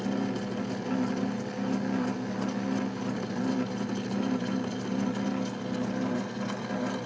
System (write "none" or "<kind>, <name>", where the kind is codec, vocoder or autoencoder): none